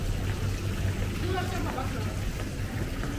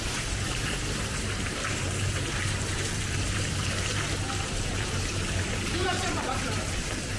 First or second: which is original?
first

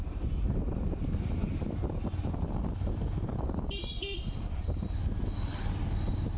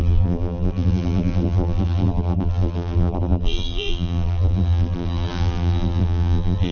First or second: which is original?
first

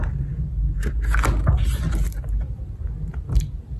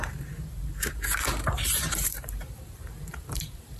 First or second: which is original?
first